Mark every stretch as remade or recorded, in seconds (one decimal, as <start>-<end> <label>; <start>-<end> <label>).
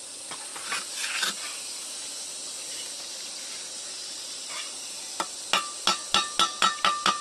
0.0-4.0 recorded; 4.0-5.4 remade; 5.4-7.2 recorded